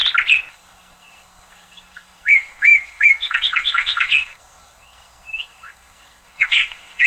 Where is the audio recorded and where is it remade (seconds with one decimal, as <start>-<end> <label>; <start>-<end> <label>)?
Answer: 0.0-0.5 recorded; 0.5-7.1 remade